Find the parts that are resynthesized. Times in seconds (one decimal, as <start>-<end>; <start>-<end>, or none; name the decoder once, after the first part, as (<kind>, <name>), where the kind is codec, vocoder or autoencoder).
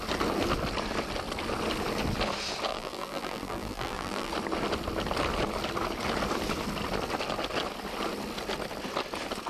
2.7-4.3 (vocoder, BigVGAN v2)